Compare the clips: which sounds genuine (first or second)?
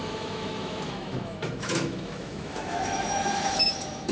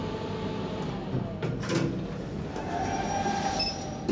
second